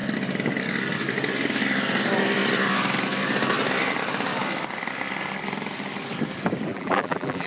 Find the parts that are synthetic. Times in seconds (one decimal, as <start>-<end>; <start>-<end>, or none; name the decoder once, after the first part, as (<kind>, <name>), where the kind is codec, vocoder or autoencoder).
6.7-7.5 (vocoder, BigVGAN v2)